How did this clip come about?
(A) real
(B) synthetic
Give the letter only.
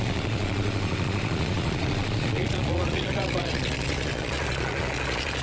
B